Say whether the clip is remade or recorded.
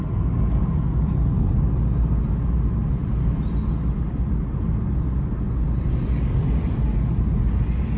recorded